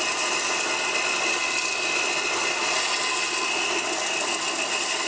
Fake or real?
real